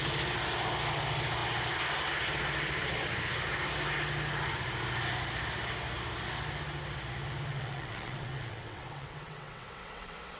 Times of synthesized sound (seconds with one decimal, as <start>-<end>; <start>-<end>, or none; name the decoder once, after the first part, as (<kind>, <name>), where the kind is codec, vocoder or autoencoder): 7.5-10.4 (vocoder, WaveNeXt)